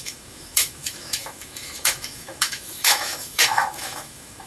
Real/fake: fake